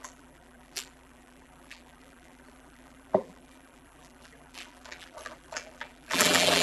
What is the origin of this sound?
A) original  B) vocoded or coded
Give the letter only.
B